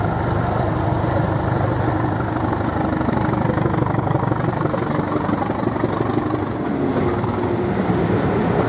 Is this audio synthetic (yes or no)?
no